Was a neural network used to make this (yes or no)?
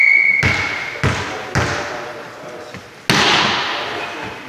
no